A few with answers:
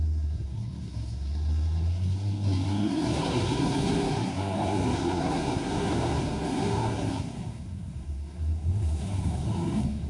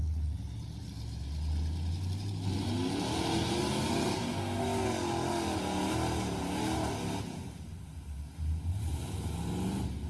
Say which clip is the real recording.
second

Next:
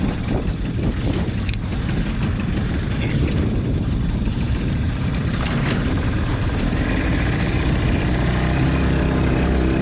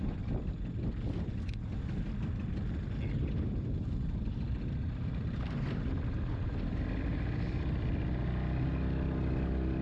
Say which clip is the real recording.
second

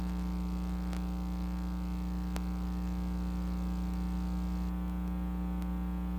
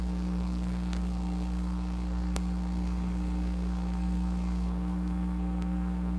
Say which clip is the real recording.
first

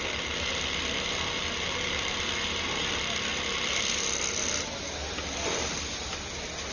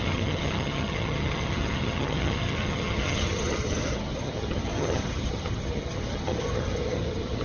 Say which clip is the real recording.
first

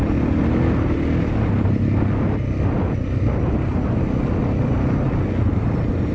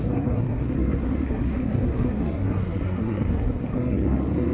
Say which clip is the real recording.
first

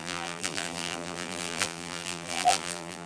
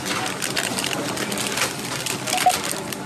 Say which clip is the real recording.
second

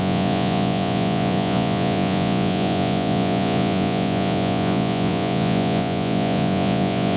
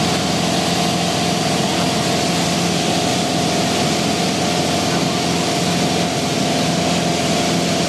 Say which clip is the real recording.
second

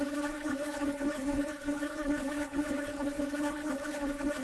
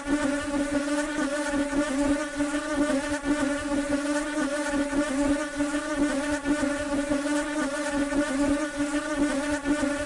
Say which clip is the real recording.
second